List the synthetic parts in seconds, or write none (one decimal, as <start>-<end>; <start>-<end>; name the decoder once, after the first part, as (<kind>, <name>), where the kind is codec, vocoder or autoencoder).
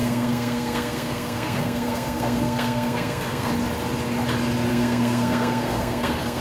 0.0-3.5 (codec, SNAC); 4.7-6.4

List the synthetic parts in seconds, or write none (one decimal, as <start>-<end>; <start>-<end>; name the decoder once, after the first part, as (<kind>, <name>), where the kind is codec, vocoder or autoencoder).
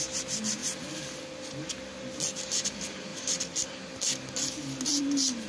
none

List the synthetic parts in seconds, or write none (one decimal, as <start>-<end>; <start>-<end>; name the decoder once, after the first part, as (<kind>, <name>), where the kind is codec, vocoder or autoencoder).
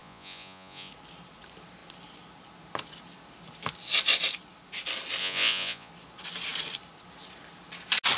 0.0-0.9 (vocoder, Vocos); 5.2-5.9